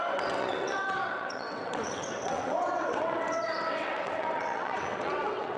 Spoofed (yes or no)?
yes